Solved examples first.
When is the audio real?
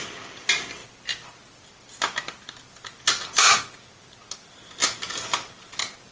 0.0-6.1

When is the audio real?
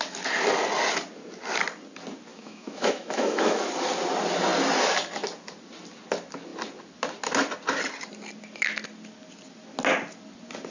0.0-2.3; 3.6-10.7